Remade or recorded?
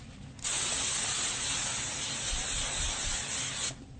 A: recorded